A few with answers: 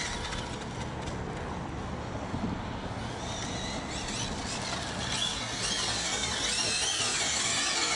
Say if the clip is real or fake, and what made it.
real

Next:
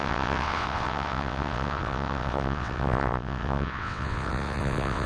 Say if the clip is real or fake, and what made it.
fake, vocoder, WaveNeXt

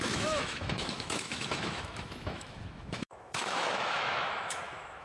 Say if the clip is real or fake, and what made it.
fake, autoencoder, DAC-VAE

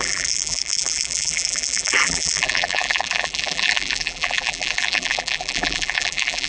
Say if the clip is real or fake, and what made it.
fake, vocoder, BigVGAN v2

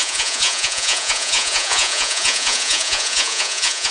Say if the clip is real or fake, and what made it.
fake, vocoder, Vocos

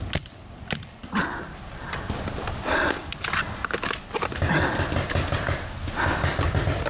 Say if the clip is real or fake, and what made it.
real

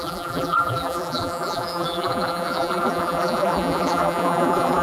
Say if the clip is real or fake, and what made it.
fake, vocoder, BigVGAN v2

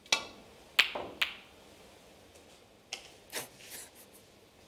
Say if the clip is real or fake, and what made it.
real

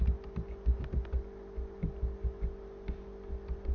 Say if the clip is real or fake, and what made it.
real